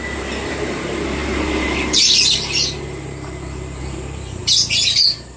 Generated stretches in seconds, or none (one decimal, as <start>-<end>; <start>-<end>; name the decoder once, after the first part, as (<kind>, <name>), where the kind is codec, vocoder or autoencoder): 0.0-5.4 (vocoder, BigVGAN v2)